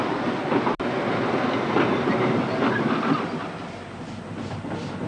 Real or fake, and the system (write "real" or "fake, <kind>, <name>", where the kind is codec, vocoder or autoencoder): real